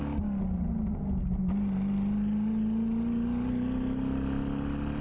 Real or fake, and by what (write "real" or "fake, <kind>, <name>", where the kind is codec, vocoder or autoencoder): real